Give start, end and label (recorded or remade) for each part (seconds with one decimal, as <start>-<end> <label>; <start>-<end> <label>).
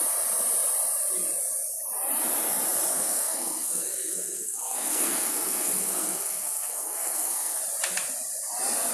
0.0-2.9 recorded; 2.9-7.6 remade; 7.6-8.9 recorded